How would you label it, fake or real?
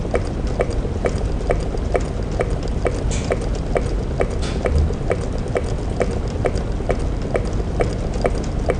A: real